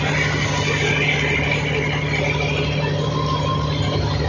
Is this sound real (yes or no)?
yes